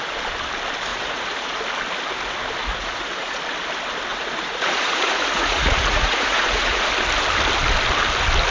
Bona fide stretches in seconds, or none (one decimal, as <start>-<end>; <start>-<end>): 0.0-0.9; 1.6-2.6; 3.4-4.1; 6.9-8.5